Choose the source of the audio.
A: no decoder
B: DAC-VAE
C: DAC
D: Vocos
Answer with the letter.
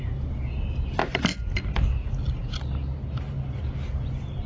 A